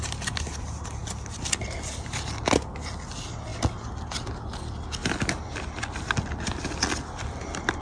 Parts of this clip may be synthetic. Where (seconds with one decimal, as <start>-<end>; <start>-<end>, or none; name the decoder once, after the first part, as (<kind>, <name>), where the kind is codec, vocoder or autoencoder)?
none